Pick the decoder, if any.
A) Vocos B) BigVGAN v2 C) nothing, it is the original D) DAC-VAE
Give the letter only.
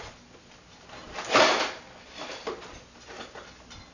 C